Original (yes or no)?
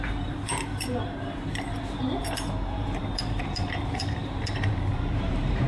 no